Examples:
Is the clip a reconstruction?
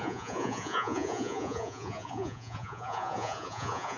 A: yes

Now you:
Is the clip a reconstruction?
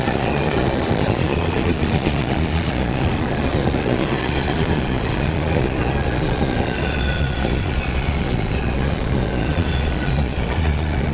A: yes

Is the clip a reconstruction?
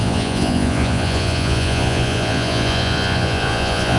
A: yes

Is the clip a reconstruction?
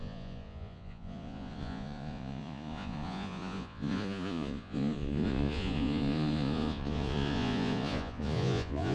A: yes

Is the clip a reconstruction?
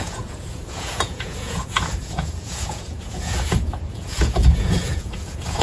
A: yes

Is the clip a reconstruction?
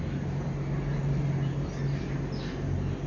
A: no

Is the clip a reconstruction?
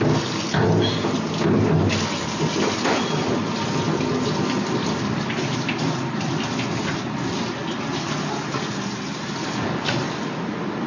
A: no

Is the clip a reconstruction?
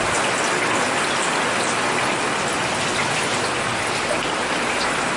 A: no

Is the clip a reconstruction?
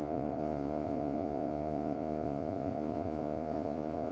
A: yes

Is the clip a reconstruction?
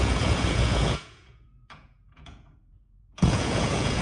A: yes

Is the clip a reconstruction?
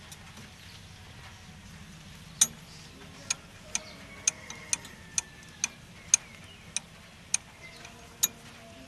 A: no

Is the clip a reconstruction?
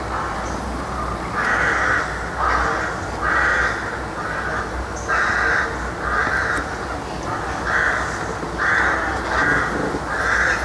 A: no